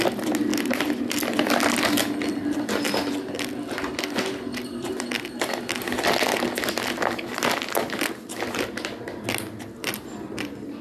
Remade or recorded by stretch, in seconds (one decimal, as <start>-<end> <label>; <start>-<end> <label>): 0.0-10.8 recorded

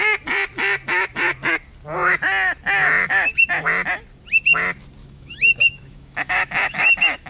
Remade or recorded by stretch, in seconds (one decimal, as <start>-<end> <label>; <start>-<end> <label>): 0.0-3.0 recorded; 3.0-3.5 remade; 3.5-5.0 recorded; 5.0-7.3 remade